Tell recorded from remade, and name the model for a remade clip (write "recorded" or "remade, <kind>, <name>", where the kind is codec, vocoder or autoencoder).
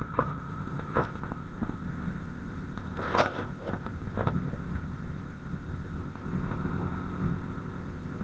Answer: remade, codec, ZipCodec